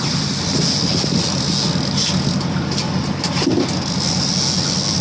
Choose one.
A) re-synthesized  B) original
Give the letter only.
B